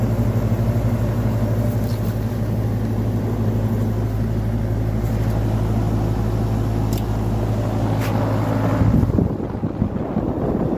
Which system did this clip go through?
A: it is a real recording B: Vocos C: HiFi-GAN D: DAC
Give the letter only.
A